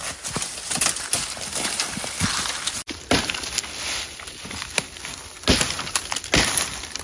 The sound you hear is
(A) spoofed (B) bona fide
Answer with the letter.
B